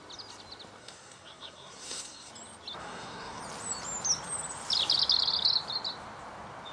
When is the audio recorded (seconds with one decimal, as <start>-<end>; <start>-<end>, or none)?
0.0-0.8; 2.3-2.8; 3.4-6.7